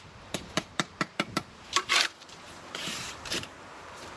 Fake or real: fake